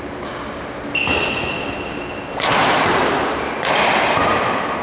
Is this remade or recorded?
recorded